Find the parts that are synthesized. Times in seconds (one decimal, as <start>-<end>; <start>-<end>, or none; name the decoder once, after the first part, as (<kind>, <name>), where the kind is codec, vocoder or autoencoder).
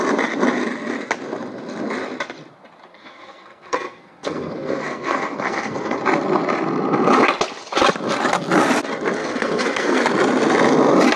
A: 2.9-6.0 (codec, SNAC); 9.2-10.0